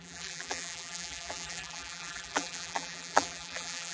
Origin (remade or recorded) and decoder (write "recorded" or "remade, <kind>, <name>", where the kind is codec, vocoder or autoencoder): remade, vocoder, BigVGAN v2